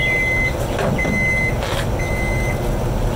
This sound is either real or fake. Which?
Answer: real